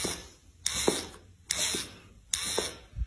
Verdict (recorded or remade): recorded